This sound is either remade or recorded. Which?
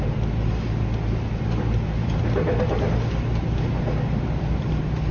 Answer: recorded